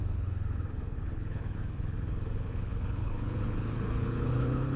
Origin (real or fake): fake